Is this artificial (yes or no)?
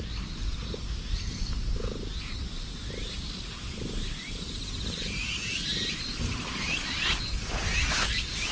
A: no